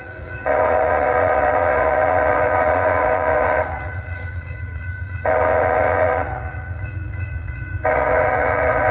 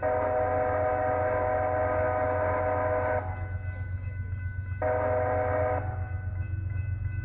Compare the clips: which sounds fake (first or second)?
first